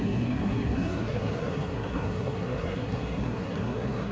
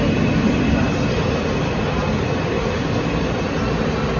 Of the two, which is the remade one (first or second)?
first